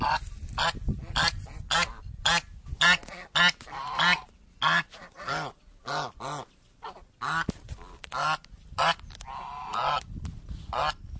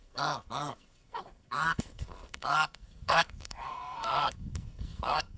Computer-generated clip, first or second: second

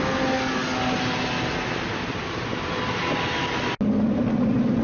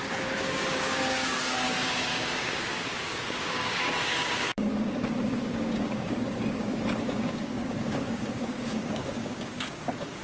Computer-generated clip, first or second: second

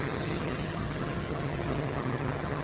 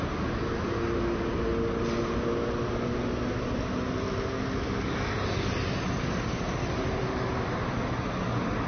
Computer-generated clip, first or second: first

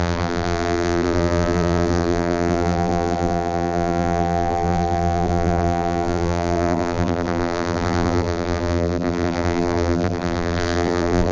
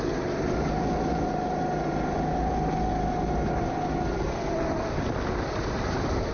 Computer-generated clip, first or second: first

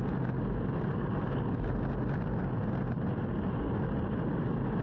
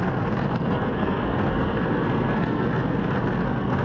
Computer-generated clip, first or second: second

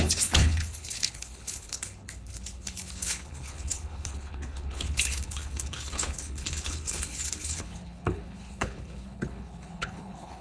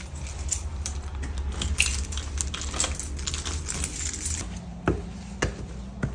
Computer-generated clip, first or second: first